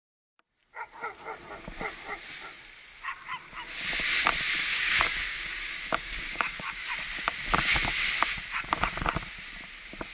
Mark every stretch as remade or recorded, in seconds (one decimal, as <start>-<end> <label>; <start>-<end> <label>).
0.0-4.7 recorded; 4.7-6.9 remade; 6.9-10.1 recorded